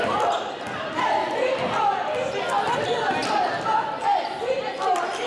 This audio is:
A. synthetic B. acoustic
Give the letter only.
B